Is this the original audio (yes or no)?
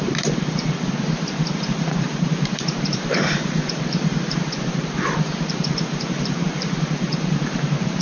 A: no